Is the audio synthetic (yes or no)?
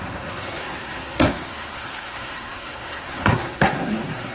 yes